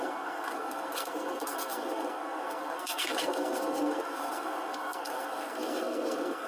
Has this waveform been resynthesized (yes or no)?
yes